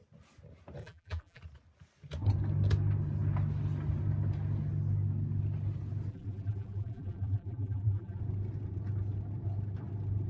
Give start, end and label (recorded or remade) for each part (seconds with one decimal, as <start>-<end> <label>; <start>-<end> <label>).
0.0-0.8 recorded; 0.8-1.4 remade; 1.4-6.1 recorded; 6.1-8.2 remade; 8.2-10.3 recorded